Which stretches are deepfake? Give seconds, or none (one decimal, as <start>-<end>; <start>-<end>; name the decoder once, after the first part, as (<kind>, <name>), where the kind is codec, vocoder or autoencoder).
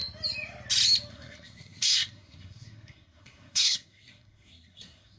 1.1-5.2 (codec, SNAC)